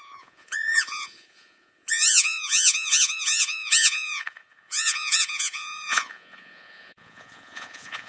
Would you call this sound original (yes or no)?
no